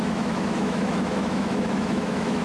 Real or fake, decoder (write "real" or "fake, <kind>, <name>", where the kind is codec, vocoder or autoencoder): fake, autoencoder, DAC-VAE